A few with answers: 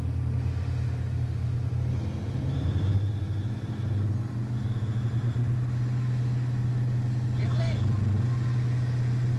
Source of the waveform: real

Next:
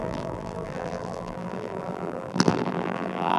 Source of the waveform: fake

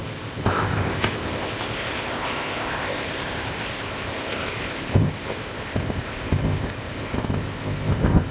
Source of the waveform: fake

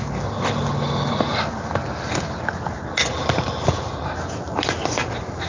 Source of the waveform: real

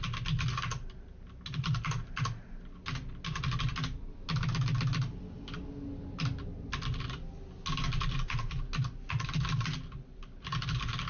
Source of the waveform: real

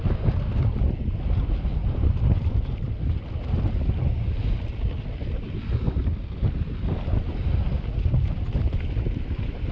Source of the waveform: real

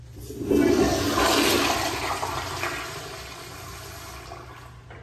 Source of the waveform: real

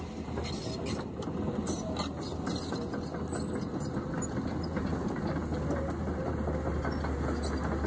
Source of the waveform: real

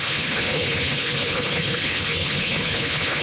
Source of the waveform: fake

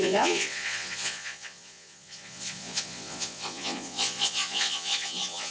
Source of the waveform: fake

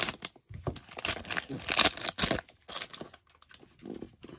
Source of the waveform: real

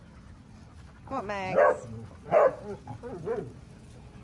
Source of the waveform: real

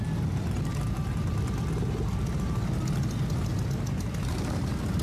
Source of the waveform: real